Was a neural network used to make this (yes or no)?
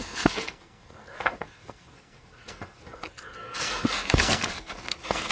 yes